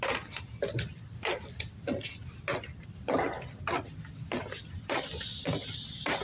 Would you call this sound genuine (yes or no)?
yes